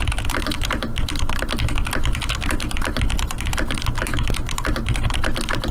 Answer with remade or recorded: recorded